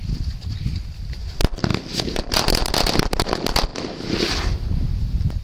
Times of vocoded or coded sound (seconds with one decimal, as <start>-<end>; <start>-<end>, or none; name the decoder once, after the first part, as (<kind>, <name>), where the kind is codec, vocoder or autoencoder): 1.7-2.7 (vocoder, BigVGAN v2)

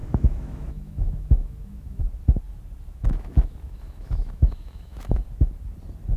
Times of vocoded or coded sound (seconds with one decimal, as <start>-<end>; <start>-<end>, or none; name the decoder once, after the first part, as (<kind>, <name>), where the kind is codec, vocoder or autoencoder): 0.0-2.0 (autoencoder, DAC-VAE); 2.9-5.2